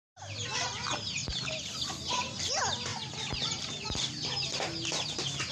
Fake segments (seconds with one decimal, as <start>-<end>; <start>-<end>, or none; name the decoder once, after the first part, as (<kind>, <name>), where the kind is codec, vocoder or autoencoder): 0.0-0.7 (vocoder, BigVGAN v2); 1.2-2.1